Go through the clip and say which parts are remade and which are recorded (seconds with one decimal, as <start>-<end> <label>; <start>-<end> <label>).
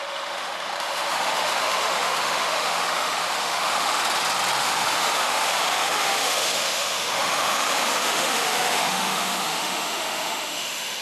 0.0-4.0 remade; 4.0-4.6 recorded; 4.6-11.0 remade